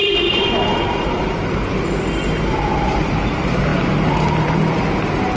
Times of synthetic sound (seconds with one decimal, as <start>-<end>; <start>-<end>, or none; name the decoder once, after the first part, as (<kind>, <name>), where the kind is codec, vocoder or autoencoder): 0.0-3.2 (vocoder, BigVGAN v2); 3.7-4.8